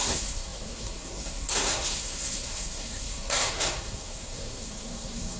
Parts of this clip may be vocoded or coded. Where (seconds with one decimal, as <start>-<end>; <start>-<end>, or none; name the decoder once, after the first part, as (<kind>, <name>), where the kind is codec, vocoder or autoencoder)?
0.0-5.4 (codec, SNAC)